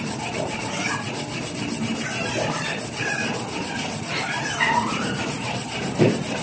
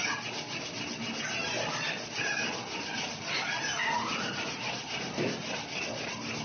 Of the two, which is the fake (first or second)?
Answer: first